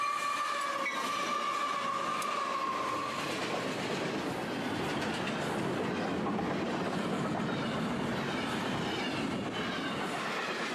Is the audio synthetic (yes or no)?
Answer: no